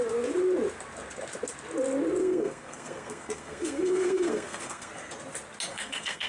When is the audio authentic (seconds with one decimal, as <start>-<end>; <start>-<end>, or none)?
0.0-2.2; 4.9-5.7